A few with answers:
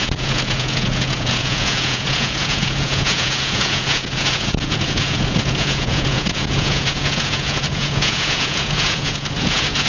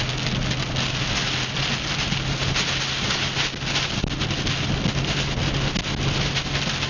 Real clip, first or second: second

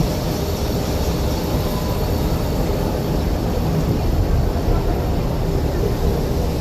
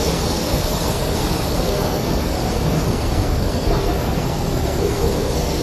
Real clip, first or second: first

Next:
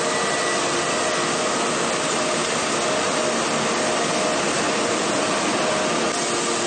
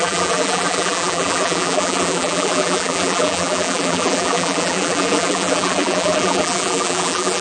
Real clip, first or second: first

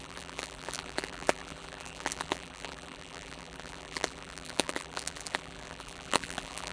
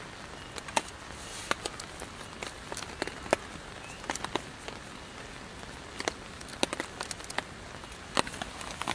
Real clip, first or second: second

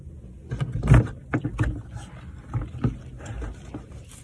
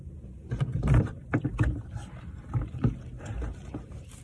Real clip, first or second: first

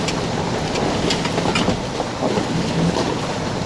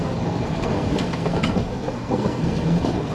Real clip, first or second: first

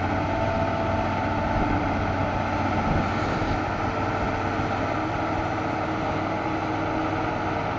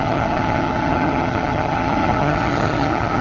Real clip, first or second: first